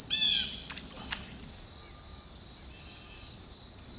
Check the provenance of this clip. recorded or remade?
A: recorded